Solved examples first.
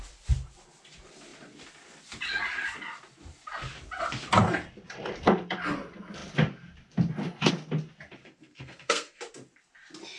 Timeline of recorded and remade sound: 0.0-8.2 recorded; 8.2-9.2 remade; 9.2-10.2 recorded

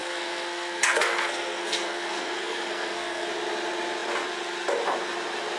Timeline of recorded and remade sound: 0.0-3.3 remade; 3.3-5.6 recorded

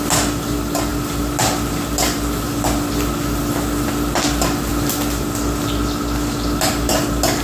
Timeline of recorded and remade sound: 0.0-7.4 recorded

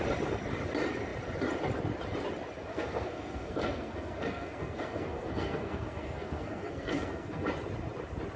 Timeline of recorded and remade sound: 0.0-2.7 recorded; 2.7-7.5 remade; 7.5-8.4 recorded